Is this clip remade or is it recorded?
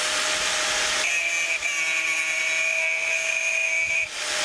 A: recorded